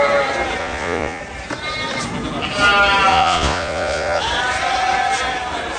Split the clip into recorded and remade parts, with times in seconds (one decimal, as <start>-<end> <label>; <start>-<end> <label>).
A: 0.0-0.6 recorded; 0.6-1.2 remade; 1.2-3.1 recorded; 3.1-4.2 remade; 4.2-5.8 recorded